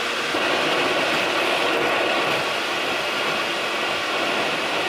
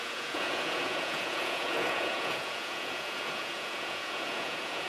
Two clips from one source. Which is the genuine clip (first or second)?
first